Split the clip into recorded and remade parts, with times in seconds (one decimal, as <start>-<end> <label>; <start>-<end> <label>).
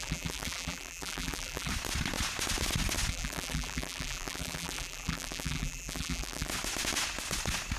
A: 0.0-1.7 remade; 1.7-3.1 recorded; 3.1-6.5 remade; 6.5-7.8 recorded